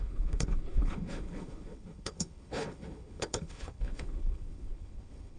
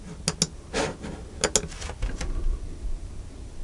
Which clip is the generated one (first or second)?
first